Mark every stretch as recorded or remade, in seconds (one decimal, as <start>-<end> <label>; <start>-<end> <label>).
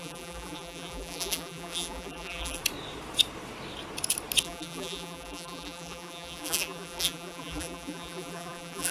0.0-2.6 remade; 2.6-4.4 recorded; 4.4-8.9 remade